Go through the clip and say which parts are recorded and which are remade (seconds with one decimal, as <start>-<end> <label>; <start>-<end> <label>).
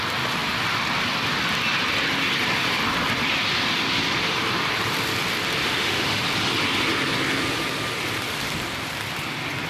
0.0-5.6 recorded; 5.6-6.2 remade; 6.2-9.7 recorded